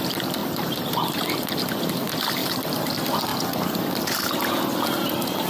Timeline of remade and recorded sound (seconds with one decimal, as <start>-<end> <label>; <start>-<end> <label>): 0.0-0.4 recorded; 0.4-1.2 remade; 1.2-2.4 recorded; 2.4-2.9 remade; 2.9-5.5 recorded